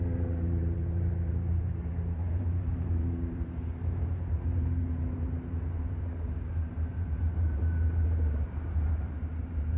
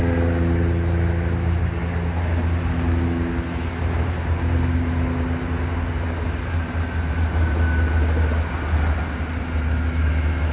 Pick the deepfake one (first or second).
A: first